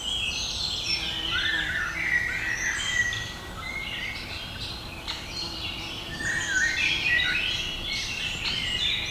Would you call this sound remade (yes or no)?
no